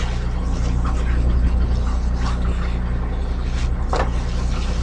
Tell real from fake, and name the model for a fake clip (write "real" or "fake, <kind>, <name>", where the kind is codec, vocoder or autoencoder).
real